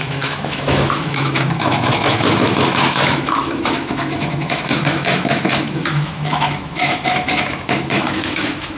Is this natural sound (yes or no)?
no